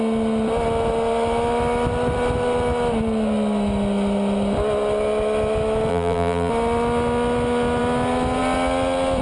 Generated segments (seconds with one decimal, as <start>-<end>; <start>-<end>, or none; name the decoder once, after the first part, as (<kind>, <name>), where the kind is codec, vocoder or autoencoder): 5.9-6.5 (vocoder, BigVGAN v2)